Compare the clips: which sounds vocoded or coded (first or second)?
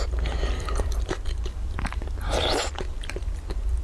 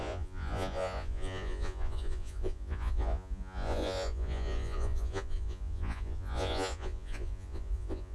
second